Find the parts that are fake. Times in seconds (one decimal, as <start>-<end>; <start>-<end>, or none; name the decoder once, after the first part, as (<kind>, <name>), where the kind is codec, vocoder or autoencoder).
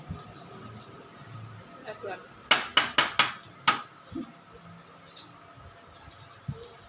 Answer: none